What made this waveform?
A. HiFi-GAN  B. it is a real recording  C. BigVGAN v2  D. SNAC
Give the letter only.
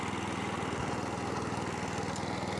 B